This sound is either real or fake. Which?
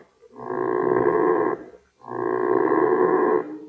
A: real